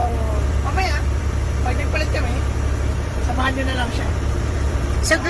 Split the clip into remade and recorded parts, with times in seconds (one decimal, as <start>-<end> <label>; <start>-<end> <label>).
0.0-5.3 remade